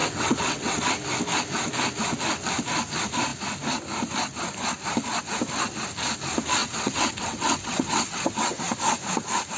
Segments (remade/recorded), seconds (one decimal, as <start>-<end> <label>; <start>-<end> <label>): 0.0-0.8 remade; 0.8-6.6 recorded; 6.6-8.6 remade; 8.6-9.6 recorded